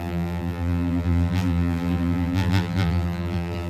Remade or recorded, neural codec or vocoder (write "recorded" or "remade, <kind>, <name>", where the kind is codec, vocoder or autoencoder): remade, vocoder, BigVGAN v2